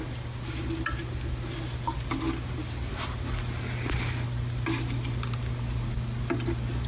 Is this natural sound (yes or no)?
yes